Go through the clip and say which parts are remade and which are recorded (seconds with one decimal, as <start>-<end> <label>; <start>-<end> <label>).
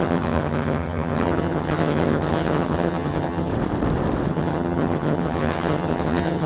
0.0-3.5 remade; 3.5-4.3 recorded; 4.3-6.5 remade